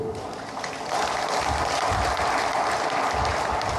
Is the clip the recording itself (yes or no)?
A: yes